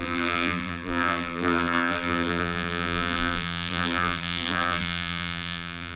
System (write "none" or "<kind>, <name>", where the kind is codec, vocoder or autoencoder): vocoder, BigVGAN v2